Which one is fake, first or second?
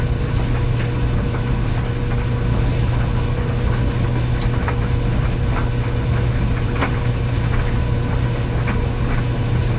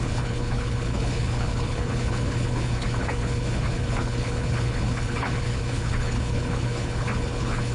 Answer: second